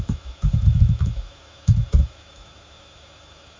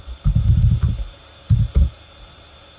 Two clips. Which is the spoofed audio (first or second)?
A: first